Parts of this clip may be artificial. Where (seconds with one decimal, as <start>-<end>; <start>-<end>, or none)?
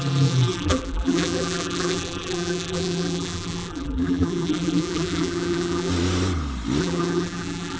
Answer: 0.0-5.9; 6.8-7.8